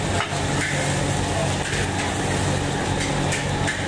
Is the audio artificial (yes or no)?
no